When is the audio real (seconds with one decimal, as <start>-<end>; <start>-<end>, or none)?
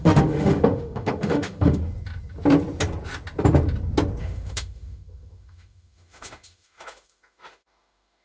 1.8-4.2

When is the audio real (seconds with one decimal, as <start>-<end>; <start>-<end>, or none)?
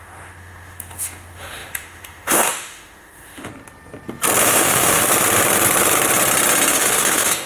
3.5-4.4; 5.0-6.7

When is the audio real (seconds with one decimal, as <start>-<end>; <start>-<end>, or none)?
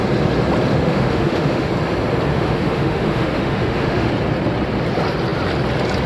0.0-0.7; 1.7-2.3; 4.1-6.1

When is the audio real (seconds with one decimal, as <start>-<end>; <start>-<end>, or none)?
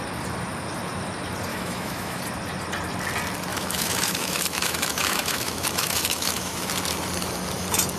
0.0-1.5; 2.2-3.5; 6.7-8.0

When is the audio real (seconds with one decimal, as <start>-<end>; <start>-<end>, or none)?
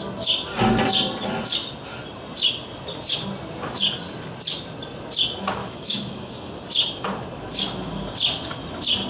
0.0-5.6; 6.5-9.1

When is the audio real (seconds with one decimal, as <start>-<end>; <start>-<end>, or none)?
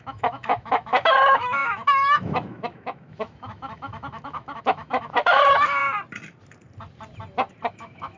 5.8-7.7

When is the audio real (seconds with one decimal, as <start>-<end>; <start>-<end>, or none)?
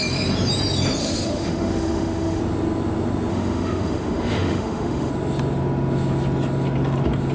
0.0-1.0; 2.4-3.3; 5.1-7.3